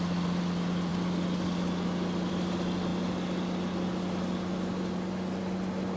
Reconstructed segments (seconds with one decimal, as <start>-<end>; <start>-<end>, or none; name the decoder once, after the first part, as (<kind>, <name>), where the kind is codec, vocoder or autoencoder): none